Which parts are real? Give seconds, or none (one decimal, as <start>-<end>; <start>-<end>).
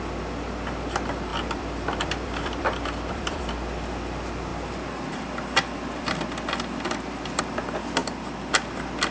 0.0-1.3; 3.4-4.5; 7.4-8.0; 8.5-9.1